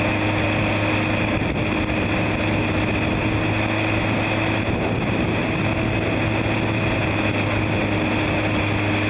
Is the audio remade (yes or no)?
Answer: no